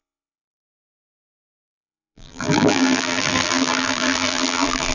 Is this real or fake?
fake